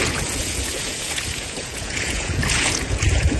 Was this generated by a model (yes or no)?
yes